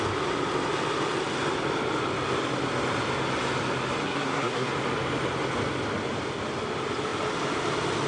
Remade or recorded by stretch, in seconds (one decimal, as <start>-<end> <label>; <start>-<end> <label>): 0.0-4.0 recorded; 4.0-4.7 remade; 4.7-8.1 recorded